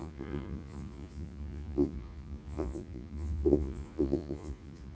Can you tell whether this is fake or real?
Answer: fake